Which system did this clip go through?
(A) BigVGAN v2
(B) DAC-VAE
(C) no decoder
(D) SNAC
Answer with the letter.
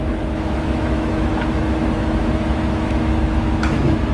B